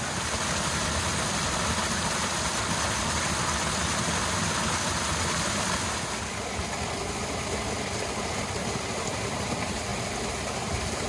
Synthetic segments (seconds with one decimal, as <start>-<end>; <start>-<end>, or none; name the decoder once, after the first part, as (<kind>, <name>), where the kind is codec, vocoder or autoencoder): none

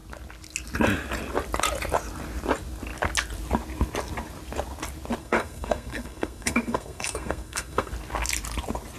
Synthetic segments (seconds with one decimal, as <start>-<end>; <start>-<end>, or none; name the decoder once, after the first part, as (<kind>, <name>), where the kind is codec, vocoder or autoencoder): 5.2-7.9 (codec, SNAC)

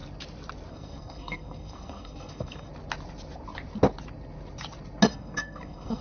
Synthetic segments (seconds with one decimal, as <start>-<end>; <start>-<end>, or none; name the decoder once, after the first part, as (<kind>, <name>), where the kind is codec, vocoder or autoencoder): 0.7-2.7 (codec, SNAC); 5.1-6.0